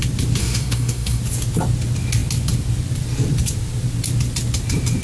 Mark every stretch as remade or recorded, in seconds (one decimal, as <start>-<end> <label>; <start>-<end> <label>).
0.0-0.4 recorded; 0.4-1.2 remade; 1.2-5.0 recorded